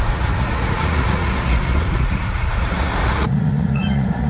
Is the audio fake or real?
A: fake